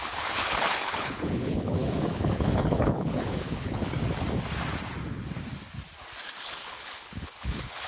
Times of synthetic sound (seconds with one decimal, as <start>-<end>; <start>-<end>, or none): 0.0-4.0; 6.4-7.9